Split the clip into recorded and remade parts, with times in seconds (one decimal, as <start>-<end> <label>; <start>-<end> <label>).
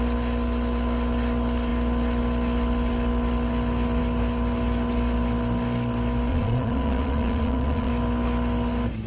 0.0-6.3 recorded; 6.3-7.9 remade; 7.9-9.1 recorded